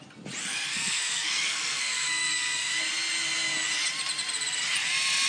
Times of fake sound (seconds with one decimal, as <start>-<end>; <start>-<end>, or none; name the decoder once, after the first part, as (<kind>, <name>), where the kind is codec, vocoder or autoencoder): 0.4-2.8 (codec, SNAC)